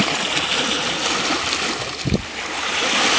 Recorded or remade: recorded